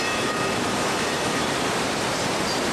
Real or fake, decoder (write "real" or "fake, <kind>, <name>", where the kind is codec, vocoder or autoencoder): fake, vocoder, BigVGAN v2